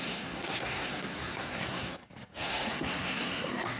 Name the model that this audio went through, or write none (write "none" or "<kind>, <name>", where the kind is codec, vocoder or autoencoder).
codec, SNAC